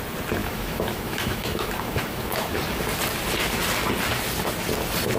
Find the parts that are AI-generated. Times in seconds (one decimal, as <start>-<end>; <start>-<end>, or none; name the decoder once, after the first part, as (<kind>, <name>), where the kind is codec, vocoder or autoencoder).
0.4-2.6 (autoencoder, DAC-VAE)